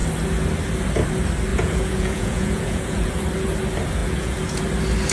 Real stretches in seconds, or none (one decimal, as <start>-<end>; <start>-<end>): 0.0-1.5; 3.1-4.0; 4.6-5.1